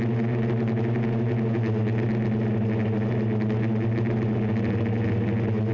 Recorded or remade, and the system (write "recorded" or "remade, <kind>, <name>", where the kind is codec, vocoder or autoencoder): recorded